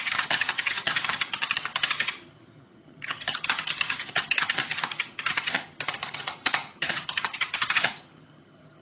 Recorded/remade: remade